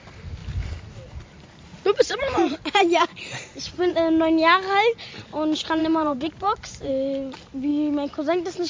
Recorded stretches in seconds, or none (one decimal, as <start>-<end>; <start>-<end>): 0.0-0.4; 3.9-5.8; 6.9-8.7